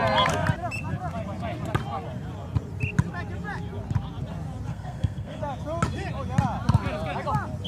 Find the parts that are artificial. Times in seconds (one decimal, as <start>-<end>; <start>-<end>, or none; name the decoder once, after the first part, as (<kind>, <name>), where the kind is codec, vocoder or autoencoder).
4.7-5.4 (codec, SNAC)